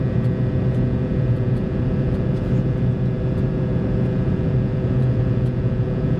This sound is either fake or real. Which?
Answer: fake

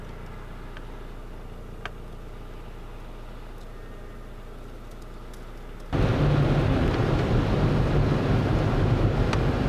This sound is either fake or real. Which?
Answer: real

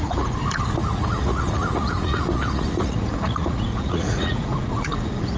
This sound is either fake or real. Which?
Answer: fake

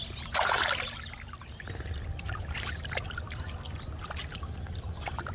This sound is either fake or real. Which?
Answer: real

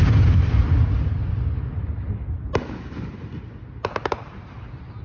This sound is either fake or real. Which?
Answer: real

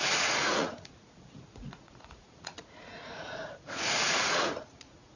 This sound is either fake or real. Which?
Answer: fake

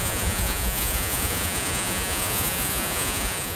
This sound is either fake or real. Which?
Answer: fake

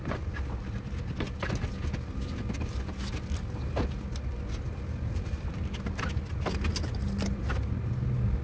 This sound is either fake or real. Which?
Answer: real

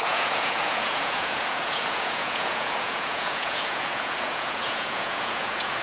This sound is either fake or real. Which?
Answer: fake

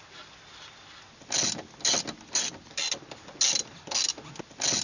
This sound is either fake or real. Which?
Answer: real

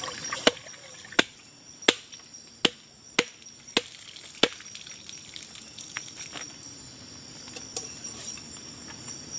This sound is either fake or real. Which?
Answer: real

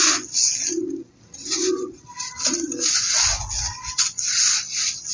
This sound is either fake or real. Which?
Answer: real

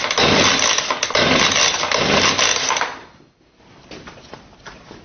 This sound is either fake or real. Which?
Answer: real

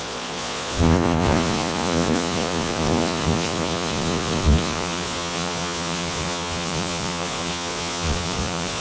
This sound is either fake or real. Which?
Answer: fake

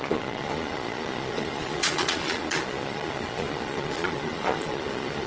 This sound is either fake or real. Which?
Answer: fake